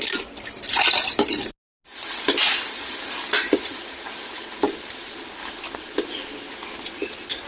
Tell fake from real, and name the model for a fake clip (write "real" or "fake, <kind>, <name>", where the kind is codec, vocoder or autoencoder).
real